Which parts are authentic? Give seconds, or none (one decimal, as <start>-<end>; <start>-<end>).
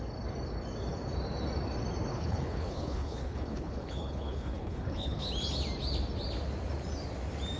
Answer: 0.0-2.1; 5.3-7.6